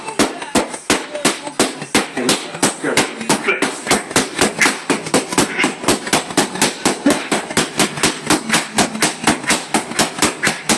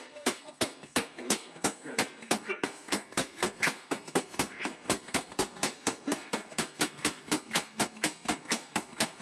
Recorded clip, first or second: first